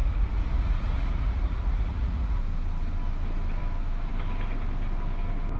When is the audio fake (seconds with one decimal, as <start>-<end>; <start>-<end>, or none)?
0.0-2.4